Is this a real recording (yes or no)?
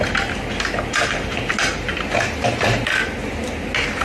yes